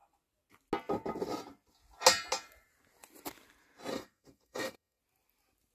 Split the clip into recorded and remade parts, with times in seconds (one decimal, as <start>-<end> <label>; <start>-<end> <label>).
0.0-3.9 recorded; 3.9-5.0 remade; 5.0-5.7 recorded